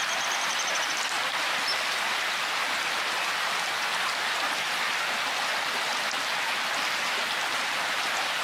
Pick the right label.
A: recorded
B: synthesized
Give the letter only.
A